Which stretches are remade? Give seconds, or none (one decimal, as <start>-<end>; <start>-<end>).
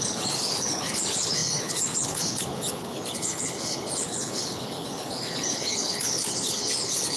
0.0-7.2